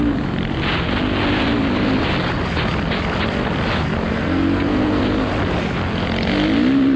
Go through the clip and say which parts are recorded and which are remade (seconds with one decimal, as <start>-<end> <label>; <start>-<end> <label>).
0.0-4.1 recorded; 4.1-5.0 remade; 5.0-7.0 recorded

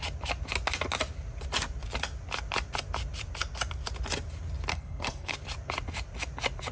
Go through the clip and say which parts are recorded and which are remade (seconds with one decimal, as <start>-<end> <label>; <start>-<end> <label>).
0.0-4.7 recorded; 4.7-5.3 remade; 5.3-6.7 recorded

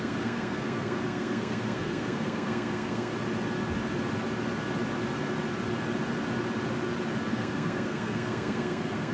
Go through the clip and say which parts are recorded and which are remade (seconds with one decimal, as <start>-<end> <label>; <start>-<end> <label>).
0.0-3.1 remade; 3.1-7.3 recorded; 7.3-9.1 remade

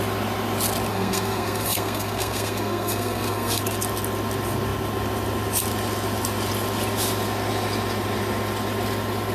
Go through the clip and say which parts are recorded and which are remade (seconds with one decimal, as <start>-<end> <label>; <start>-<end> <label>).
0.0-0.9 recorded; 0.9-3.6 remade; 3.6-9.3 recorded